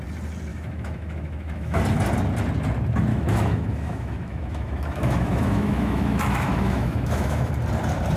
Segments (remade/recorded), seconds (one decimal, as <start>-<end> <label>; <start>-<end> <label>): 0.0-0.5 recorded; 0.5-1.8 remade; 1.8-3.1 recorded; 3.1-7.5 remade; 7.5-8.2 recorded